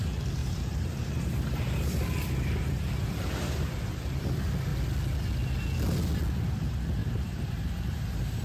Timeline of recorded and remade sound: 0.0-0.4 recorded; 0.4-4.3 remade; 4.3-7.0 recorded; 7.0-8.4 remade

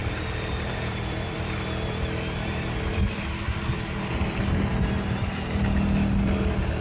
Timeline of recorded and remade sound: 0.0-4.1 remade; 4.1-6.8 recorded

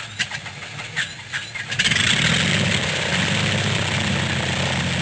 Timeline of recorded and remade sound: 0.0-1.1 recorded; 1.1-4.1 remade; 4.1-5.0 recorded

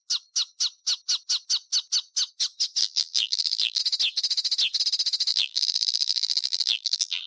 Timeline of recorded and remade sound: 0.0-2.8 recorded; 2.8-3.8 remade; 3.8-5.3 recorded; 5.3-7.3 remade